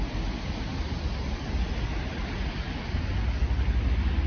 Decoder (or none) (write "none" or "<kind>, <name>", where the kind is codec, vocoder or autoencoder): none